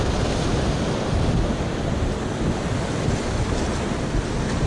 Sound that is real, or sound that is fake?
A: real